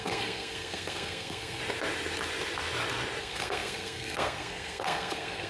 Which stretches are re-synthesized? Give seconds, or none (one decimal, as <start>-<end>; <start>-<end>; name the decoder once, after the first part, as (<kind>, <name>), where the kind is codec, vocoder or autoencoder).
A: 0.0-1.6 (codec, SNAC); 3.2-5.5